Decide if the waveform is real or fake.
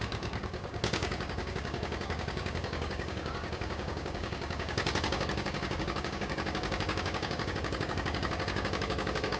fake